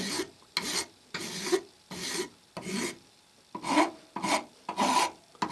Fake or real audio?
real